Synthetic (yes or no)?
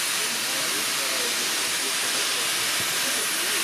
no